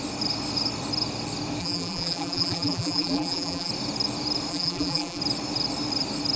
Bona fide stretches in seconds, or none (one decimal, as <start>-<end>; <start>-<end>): 0.0-1.6; 3.7-4.5; 5.2-6.4